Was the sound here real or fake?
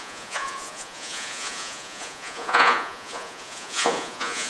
fake